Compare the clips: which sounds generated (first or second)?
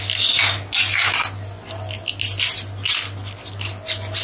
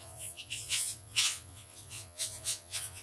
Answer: second